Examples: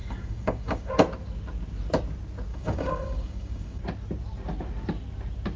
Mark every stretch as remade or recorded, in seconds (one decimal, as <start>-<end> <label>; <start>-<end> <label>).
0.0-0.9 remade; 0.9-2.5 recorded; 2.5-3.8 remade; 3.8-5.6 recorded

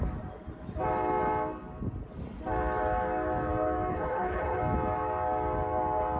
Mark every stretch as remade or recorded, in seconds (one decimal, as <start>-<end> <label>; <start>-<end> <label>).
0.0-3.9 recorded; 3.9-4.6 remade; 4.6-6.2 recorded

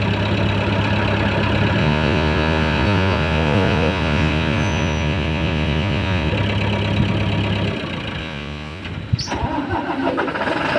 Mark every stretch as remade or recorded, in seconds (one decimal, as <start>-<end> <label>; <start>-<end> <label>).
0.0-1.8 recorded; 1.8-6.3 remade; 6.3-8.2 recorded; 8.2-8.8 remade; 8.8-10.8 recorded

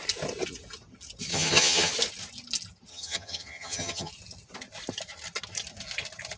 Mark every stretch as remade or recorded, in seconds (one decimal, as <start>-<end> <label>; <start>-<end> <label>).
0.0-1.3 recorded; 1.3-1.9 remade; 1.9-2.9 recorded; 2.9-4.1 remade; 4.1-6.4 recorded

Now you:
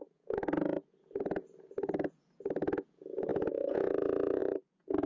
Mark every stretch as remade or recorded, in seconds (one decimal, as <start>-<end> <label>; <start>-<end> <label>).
0.0-5.1 remade

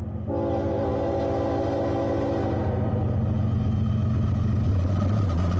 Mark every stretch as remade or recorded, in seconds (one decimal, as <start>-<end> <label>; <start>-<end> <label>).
0.0-4.7 recorded; 4.7-5.6 remade